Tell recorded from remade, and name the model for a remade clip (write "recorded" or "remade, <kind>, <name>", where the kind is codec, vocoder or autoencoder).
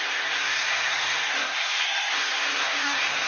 remade, codec, SNAC